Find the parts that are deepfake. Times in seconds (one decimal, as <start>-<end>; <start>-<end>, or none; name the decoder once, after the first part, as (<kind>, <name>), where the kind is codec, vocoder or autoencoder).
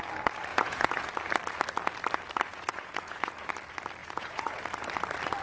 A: 0.5-1.1 (vocoder, Vocos); 2.5-3.5; 4.0-4.6